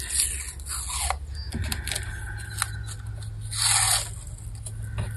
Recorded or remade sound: recorded